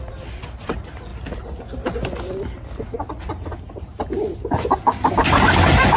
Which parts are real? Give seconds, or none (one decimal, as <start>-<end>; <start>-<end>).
0.0-6.0